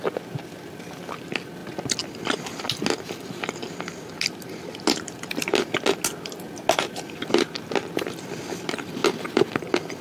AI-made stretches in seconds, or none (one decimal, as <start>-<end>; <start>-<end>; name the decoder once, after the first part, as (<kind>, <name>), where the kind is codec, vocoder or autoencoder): none

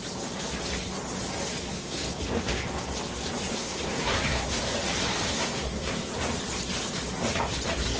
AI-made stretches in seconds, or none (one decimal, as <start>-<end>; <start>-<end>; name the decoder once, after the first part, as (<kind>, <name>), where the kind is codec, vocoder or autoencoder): 1.7-2.2 (codec, SNAC); 3.5-4.6; 5.3-6.1

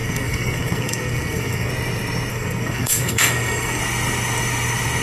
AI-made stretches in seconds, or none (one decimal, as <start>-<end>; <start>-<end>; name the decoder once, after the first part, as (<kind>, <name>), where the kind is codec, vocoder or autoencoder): 0.0-1.7 (codec, SNAC); 2.3-3.8

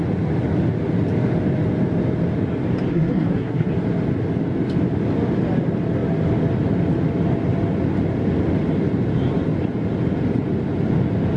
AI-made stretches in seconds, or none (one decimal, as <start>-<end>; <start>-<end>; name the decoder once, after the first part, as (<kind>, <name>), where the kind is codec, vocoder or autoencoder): 2.9-3.7 (codec, SNAC)